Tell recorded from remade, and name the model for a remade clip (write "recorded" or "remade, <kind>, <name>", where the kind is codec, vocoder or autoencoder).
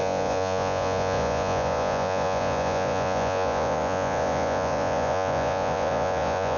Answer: remade, vocoder, Vocos